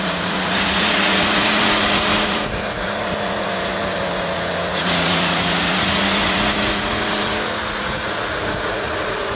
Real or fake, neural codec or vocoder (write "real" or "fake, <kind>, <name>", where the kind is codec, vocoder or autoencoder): fake, vocoder, Vocos